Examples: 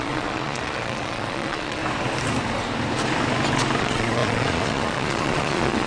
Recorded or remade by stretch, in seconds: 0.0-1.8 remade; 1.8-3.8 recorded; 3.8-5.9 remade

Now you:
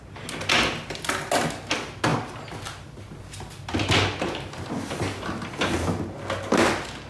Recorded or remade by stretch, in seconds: 0.0-7.1 recorded

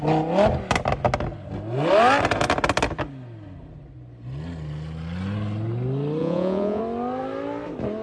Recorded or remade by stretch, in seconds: 0.0-6.2 recorded; 6.2-6.8 remade; 6.8-8.0 recorded

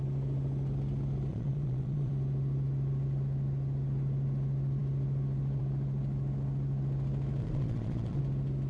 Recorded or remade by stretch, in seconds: 0.0-1.3 recorded; 1.3-2.1 remade; 2.1-7.4 recorded; 7.4-8.2 remade; 8.2-8.7 recorded